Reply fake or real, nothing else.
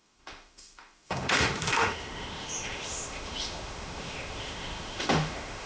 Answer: fake